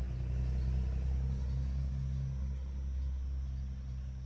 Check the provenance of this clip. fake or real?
real